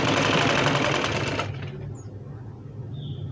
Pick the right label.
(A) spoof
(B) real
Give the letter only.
B